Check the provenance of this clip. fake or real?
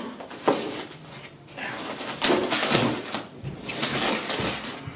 real